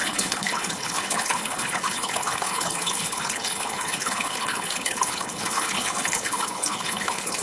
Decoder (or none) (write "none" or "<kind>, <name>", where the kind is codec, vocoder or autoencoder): codec, HILCodec